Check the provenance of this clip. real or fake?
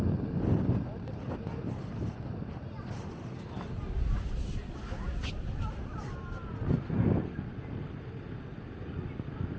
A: real